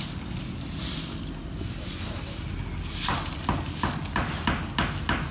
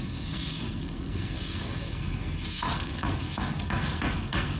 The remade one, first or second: second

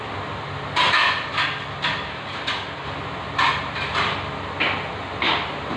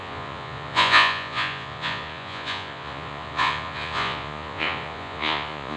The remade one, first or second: second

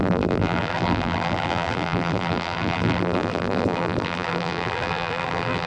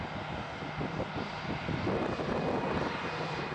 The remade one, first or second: first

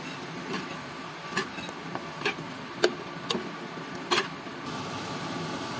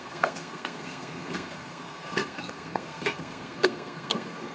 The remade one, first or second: second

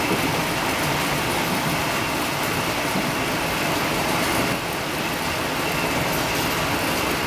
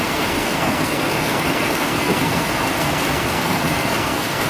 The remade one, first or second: second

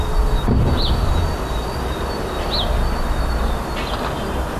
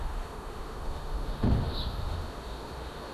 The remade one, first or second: second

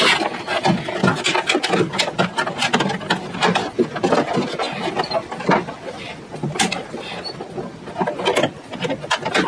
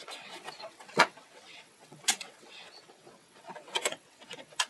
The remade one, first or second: second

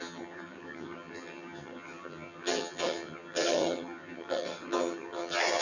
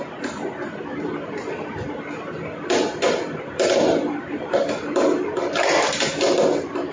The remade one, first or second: first